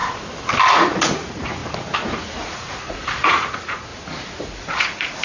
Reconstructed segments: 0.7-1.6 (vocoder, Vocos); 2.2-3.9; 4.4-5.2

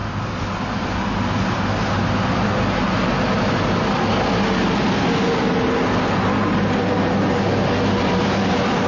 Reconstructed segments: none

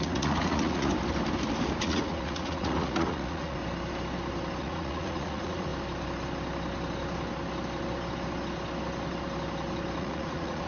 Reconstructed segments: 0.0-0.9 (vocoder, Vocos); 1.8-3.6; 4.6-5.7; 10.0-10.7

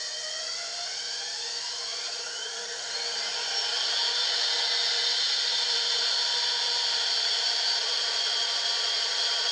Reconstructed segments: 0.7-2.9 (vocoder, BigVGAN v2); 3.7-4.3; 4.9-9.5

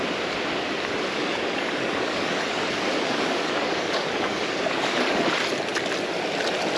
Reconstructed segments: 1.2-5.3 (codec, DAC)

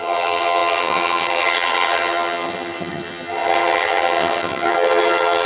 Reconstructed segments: 0.0-5.5 (vocoder, HiFi-GAN)

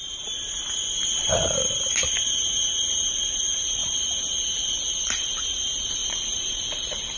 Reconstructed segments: 0.0-7.2 (vocoder, BigVGAN v2)

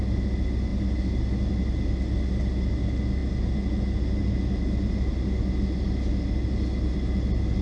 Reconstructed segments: none